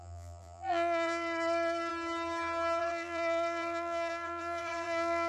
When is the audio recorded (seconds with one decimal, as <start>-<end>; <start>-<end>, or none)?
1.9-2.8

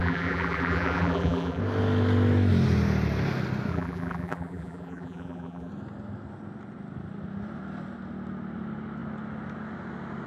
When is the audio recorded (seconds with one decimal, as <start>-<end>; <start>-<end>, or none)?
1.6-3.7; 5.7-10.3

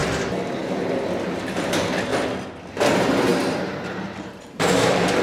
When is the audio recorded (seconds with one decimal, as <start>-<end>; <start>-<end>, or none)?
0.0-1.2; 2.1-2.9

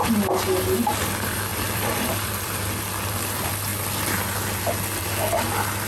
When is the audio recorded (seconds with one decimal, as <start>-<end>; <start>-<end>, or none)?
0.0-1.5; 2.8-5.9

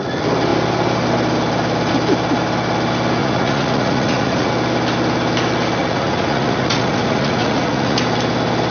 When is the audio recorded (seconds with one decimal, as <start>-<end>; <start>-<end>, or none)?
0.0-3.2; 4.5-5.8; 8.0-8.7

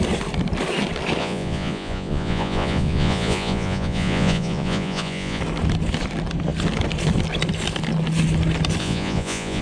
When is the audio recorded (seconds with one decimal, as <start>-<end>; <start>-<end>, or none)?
0.0-1.2; 5.4-8.8